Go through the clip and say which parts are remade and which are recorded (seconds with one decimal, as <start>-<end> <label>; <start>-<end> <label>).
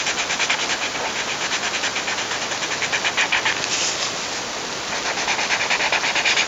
0.0-6.5 recorded